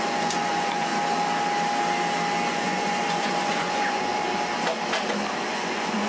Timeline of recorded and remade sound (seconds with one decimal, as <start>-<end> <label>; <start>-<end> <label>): 0.0-0.9 remade; 0.9-2.5 recorded; 2.5-4.1 remade; 4.1-5.4 recorded; 5.4-6.1 remade